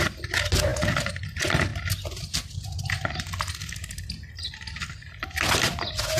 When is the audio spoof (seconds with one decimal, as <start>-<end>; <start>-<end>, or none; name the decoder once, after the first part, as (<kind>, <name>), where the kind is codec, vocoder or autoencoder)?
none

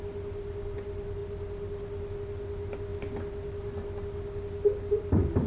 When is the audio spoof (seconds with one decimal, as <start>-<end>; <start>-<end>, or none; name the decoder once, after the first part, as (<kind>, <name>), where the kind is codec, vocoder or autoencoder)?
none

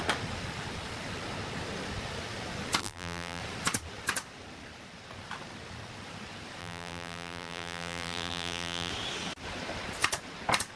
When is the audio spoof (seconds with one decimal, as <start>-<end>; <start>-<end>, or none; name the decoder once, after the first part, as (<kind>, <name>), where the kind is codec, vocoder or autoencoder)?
2.8-3.4 (vocoder, BigVGAN v2); 6.6-8.9

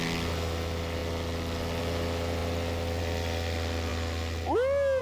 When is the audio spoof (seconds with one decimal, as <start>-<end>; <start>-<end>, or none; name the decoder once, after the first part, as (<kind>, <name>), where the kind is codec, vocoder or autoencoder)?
none

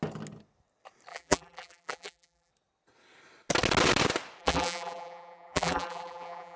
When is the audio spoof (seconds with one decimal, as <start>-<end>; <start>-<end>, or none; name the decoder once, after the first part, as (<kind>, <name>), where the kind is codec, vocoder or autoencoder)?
1.1-2.5 (vocoder, BigVGAN v2); 4.4-6.6

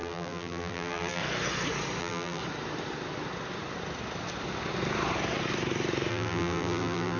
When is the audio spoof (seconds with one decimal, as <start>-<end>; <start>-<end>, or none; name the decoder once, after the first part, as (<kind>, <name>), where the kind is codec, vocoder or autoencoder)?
0.0-1.2 (vocoder, BigVGAN v2); 2.0-2.4; 6.1-7.2

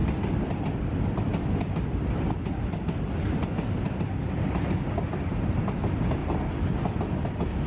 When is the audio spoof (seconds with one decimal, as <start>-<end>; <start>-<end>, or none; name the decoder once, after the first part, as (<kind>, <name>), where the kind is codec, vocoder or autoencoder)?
none

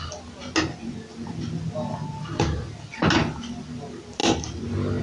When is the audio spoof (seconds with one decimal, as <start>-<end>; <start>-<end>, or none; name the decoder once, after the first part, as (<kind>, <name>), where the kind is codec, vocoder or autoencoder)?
none